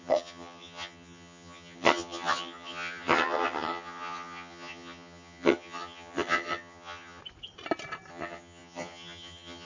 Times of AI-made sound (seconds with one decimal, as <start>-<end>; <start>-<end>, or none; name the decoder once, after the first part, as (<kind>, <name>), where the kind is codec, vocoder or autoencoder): 0.0-7.2 (vocoder, HiFi-GAN); 8.1-9.7